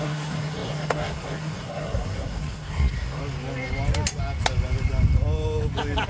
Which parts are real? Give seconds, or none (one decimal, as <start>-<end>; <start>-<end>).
3.2-6.1